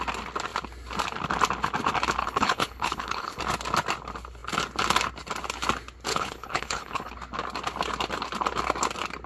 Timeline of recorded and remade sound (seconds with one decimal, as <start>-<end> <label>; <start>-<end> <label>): 0.0-2.2 recorded; 2.2-3.4 remade; 3.4-6.1 recorded; 6.1-7.1 remade; 7.1-9.3 recorded